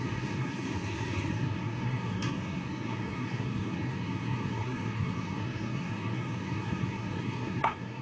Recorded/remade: remade